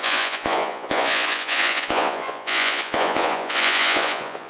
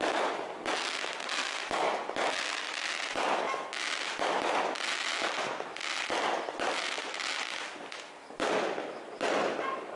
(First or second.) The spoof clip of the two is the first